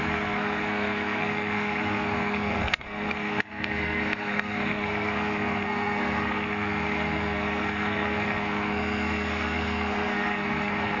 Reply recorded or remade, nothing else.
remade